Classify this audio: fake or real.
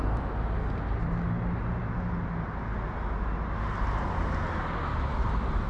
real